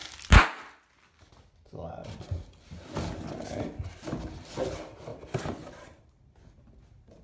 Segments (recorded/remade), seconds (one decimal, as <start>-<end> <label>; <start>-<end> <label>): 0.0-7.2 recorded